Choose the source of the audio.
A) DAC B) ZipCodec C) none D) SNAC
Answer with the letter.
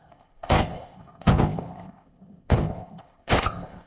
B